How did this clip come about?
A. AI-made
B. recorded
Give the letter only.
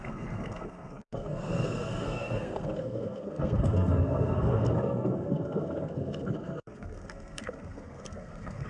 A